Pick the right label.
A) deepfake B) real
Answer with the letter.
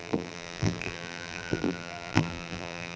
A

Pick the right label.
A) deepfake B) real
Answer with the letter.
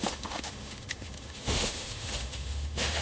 A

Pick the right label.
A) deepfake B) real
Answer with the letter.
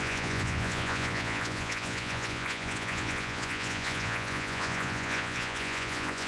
A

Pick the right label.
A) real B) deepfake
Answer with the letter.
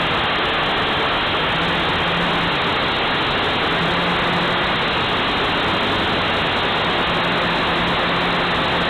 A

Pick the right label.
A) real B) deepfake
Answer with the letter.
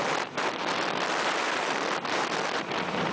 B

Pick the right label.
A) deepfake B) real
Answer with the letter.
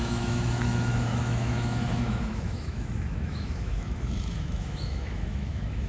A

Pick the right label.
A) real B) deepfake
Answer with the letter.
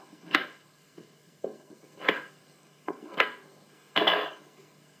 B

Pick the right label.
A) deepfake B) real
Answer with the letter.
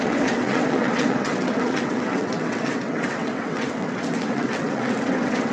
A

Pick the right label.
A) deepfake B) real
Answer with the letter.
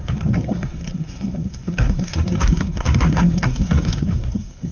A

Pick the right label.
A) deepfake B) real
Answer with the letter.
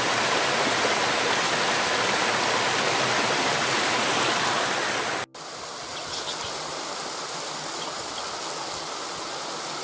B